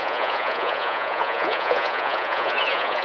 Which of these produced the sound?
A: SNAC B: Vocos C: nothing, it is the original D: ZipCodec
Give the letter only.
B